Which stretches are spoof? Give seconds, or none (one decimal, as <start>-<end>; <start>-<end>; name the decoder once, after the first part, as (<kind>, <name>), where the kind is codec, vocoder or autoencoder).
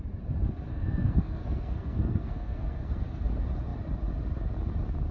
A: 0.7-3.0 (codec, SNAC)